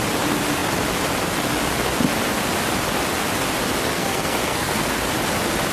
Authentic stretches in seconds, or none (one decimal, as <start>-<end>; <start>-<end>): 0.0-3.9; 5.0-5.7